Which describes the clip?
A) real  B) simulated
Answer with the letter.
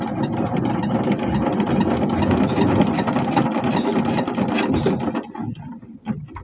A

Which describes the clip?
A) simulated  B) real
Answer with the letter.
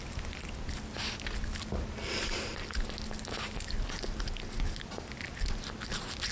B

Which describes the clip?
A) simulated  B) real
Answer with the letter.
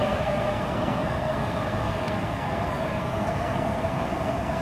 A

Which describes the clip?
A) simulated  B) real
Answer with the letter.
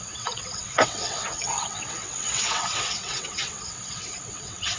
A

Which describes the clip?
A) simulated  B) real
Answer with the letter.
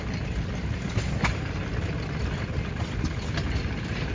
B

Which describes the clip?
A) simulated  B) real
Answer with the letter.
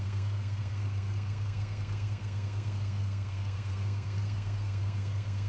A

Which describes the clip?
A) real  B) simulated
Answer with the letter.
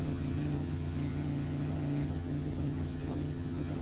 B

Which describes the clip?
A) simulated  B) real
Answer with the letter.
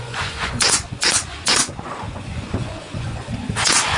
A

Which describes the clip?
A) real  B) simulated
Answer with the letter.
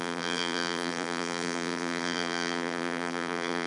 B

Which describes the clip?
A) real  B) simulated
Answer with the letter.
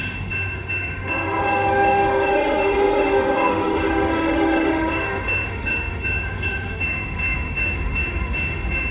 B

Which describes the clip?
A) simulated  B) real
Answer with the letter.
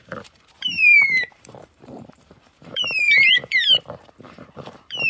A